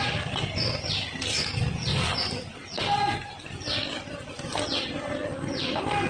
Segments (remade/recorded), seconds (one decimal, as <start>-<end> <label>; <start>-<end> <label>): 0.0-6.1 recorded